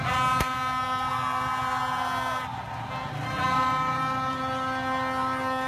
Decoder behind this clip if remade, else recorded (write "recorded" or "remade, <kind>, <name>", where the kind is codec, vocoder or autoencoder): recorded